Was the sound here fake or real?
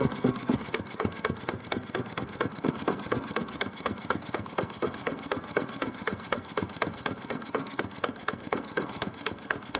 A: fake